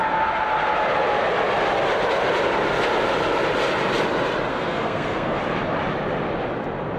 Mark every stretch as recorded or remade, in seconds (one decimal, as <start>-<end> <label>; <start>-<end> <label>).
0.0-4.5 recorded; 4.5-5.4 remade; 5.4-7.0 recorded